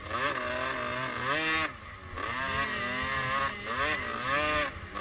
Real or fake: real